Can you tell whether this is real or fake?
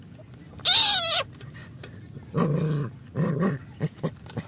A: real